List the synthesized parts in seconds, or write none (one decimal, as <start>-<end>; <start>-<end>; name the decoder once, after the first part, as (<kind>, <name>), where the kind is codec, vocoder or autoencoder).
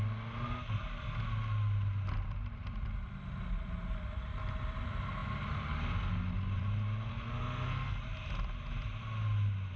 7.1-8.0 (codec, SNAC)